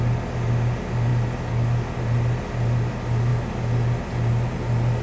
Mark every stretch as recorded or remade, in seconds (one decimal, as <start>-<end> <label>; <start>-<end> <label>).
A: 0.0-5.0 recorded